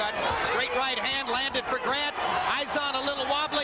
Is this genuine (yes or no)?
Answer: yes